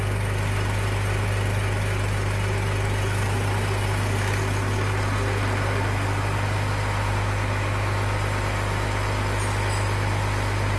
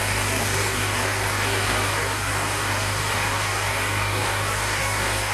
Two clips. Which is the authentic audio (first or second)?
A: first